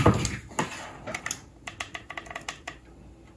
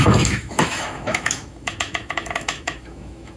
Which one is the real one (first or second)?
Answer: first